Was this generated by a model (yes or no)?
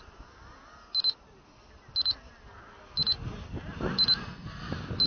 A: no